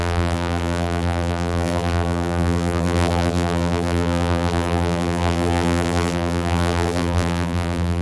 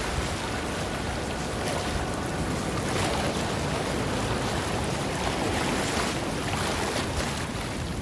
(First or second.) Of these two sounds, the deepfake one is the first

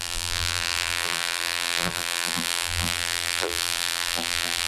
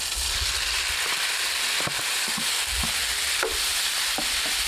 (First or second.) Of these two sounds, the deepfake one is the first